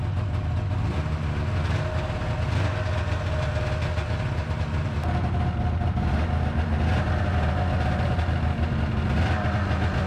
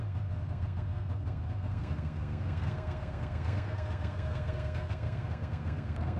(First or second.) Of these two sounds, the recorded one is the first